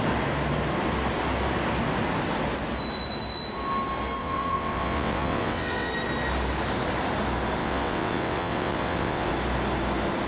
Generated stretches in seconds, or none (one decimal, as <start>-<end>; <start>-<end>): 4.2-5.9; 7.6-9.3